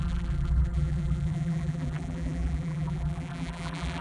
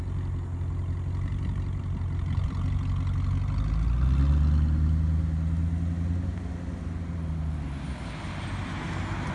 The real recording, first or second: second